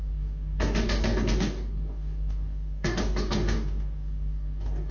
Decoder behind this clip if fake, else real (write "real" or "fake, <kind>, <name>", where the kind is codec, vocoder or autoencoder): fake, codec, DAC